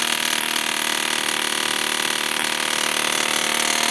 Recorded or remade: recorded